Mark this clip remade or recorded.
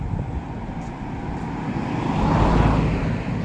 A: recorded